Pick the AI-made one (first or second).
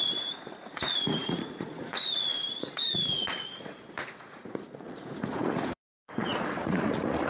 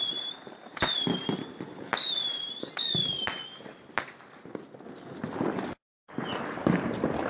first